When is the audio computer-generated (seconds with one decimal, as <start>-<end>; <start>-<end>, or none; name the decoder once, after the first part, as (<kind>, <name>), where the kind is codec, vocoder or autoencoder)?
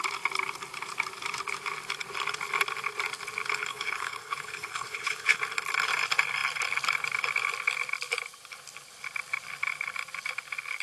3.7-5.4 (codec, HILCodec)